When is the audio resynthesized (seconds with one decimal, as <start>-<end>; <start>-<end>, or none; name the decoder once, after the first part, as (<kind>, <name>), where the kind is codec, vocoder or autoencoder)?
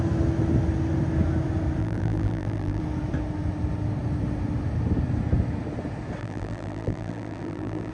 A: 1.8-2.8 (vocoder, BigVGAN v2); 6.2-7.9